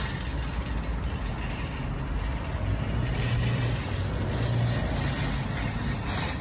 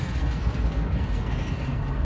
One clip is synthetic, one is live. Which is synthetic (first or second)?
second